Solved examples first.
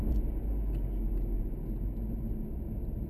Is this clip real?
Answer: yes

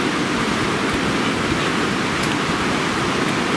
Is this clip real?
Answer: yes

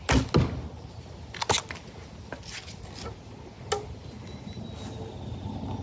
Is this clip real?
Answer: yes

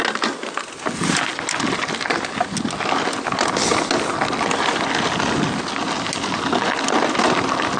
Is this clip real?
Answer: yes